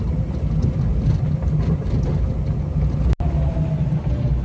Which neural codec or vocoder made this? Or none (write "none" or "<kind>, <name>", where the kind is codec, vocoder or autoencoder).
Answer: none